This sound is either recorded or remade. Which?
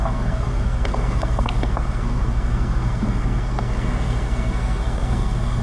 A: remade